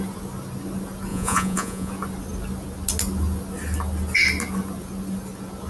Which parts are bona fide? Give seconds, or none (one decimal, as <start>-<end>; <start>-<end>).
0.0-1.1; 1.9-5.7